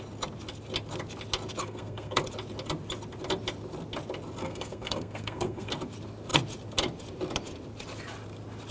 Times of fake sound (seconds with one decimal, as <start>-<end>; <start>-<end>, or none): 1.6-2.2; 4.4-5.7